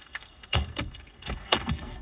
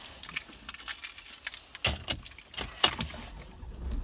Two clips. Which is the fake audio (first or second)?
first